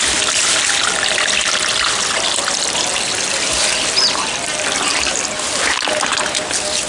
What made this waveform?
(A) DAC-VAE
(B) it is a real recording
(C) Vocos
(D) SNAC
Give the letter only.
B